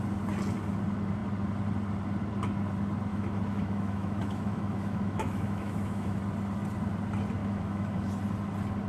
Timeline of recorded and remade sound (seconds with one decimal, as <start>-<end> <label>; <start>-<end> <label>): 0.0-3.1 recorded; 3.1-6.2 remade; 6.2-7.4 recorded; 7.4-8.1 remade; 8.1-8.9 recorded